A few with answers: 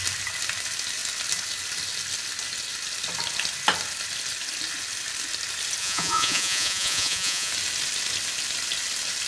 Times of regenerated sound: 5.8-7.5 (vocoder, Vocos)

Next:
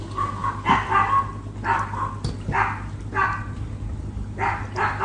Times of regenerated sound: none